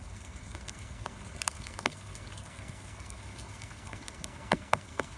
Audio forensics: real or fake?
fake